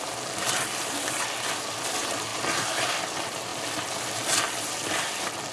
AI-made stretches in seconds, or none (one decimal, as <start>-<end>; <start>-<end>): none